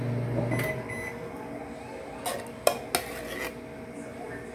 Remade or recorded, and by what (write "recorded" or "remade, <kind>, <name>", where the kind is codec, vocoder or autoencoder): recorded